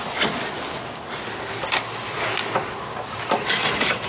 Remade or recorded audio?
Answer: recorded